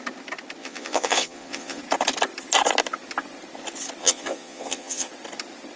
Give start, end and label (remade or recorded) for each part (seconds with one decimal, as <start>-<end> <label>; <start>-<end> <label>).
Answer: 0.0-0.6 recorded; 0.6-1.8 remade; 1.8-4.0 recorded; 4.0-5.1 remade; 5.1-5.8 recorded